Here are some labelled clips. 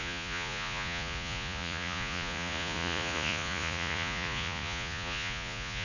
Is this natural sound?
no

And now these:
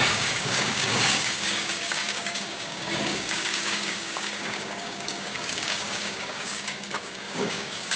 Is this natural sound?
no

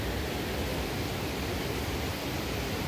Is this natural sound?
yes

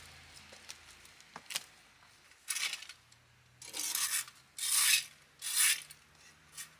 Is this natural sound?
yes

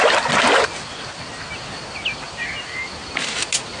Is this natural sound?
yes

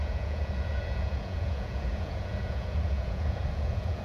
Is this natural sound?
no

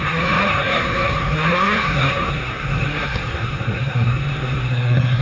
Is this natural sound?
no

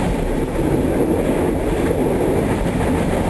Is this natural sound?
yes